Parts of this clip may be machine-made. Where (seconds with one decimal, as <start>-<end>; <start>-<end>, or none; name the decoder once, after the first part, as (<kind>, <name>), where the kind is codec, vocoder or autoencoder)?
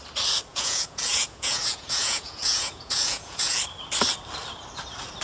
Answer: 0.5-3.6 (vocoder, Vocos)